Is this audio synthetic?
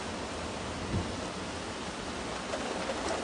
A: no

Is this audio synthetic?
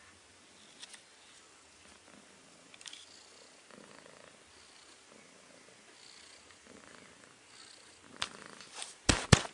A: no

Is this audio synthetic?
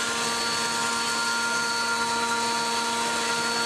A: no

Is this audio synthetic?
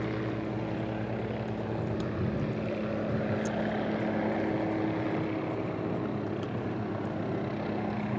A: no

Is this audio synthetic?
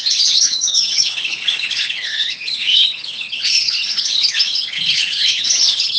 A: yes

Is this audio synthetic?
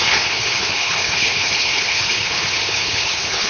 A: yes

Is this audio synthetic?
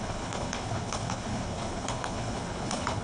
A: yes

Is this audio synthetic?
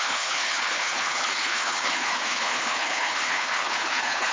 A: yes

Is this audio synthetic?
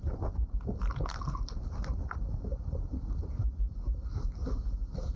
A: no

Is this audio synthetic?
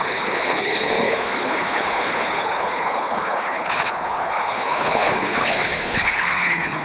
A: yes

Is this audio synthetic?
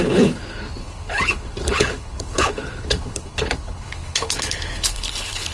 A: yes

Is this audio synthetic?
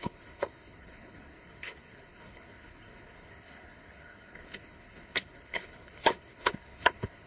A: yes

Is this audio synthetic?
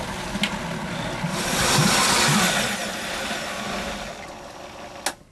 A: no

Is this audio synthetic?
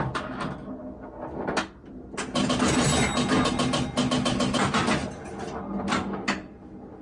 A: no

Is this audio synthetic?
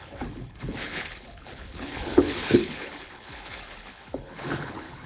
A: yes